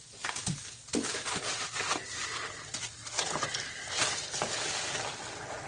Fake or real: real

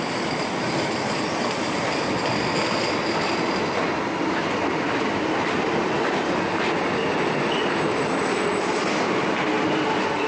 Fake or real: real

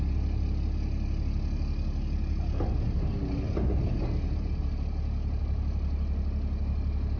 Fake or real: real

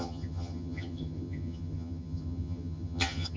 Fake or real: fake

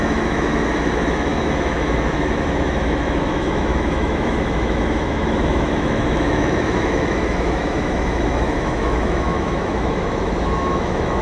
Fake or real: fake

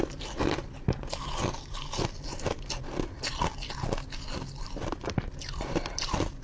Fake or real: real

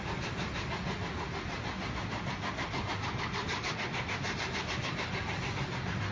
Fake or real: real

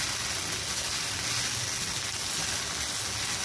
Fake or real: real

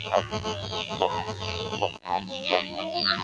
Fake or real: fake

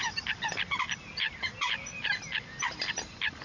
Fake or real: real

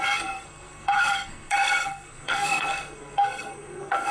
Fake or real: fake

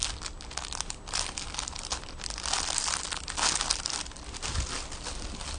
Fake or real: real